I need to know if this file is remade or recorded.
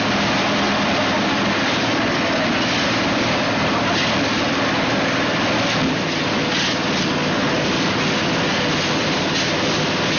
recorded